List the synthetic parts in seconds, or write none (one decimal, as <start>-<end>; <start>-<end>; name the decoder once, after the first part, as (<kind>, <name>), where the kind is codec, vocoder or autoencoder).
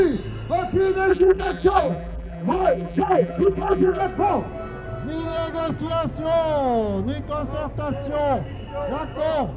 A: 1.1-4.0 (vocoder, BigVGAN v2)